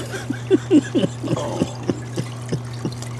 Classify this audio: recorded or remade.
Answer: recorded